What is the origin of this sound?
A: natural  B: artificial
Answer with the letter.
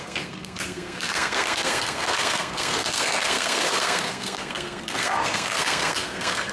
B